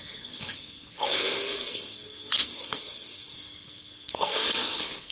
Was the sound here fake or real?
fake